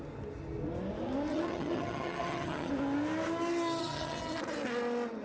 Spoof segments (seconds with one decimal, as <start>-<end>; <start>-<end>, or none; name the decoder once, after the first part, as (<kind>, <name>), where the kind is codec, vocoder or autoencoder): 1.3-2.7 (vocoder, HiFi-GAN); 3.8-4.4